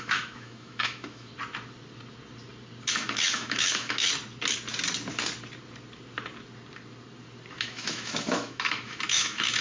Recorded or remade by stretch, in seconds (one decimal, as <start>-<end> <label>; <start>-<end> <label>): 0.0-1.3 remade; 1.3-2.9 recorded; 2.9-4.1 remade; 4.1-7.5 recorded; 7.5-9.6 remade